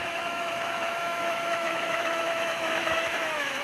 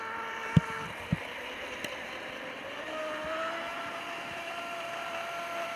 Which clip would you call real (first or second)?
second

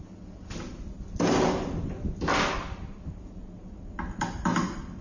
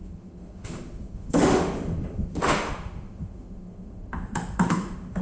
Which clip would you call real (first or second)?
first